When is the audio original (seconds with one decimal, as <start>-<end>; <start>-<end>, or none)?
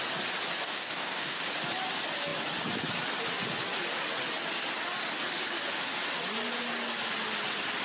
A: 0.0-0.6; 1.4-7.8